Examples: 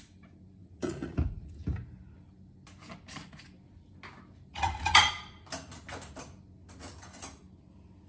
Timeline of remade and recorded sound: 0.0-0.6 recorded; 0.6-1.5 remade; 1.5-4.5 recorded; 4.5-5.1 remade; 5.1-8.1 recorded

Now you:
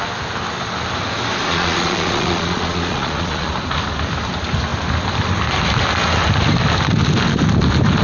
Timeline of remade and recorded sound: 0.0-1.5 recorded; 1.5-3.5 remade; 3.5-8.0 recorded